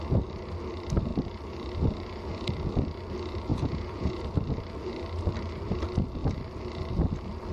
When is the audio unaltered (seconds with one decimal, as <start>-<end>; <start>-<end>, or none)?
0.0-3.5; 4.2-7.5